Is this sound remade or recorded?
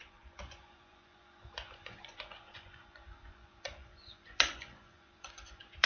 remade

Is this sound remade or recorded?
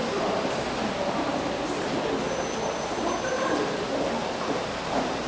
recorded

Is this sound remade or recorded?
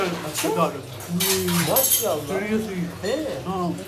recorded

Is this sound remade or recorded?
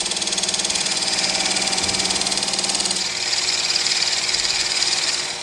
remade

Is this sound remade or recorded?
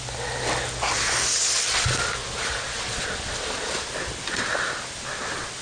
recorded